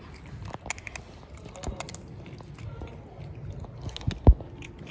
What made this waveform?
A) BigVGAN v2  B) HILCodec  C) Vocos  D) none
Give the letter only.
D